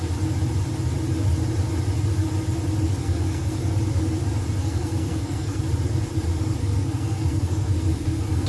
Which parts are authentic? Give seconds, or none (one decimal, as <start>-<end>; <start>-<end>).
0.0-3.0; 3.6-4.6; 5.6-6.6